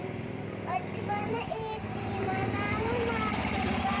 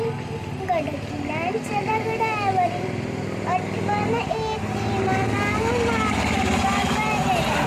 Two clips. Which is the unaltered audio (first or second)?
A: second